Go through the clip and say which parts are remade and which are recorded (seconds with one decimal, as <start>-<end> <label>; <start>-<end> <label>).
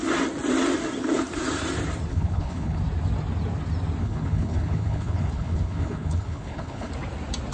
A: 0.0-2.1 recorded; 2.1-2.8 remade; 2.8-4.0 recorded; 4.0-6.9 remade; 6.9-7.5 recorded